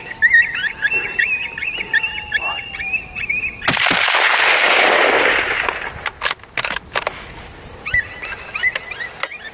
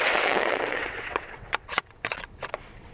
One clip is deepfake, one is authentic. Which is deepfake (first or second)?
second